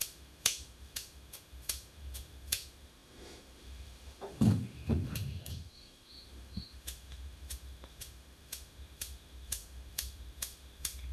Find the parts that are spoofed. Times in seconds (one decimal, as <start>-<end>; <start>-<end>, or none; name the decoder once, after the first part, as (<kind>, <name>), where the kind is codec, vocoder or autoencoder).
0.0-11.1 (autoencoder, DAC-VAE)